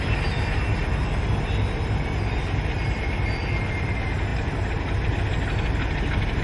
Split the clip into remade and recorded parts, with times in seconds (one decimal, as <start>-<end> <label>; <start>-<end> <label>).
0.0-6.4 recorded